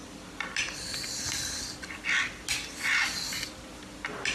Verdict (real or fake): real